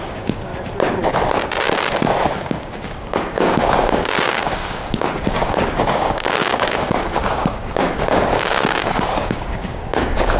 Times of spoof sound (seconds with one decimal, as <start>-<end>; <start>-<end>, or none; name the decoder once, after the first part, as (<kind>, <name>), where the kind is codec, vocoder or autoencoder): 0.0-0.5 (codec, DAC); 2.4-10.4